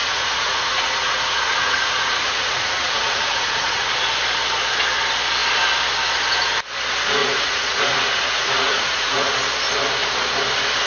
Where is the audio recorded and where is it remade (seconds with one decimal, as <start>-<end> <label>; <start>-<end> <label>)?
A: 0.0-3.9 remade; 3.9-7.2 recorded; 7.2-9.3 remade; 9.3-10.9 recorded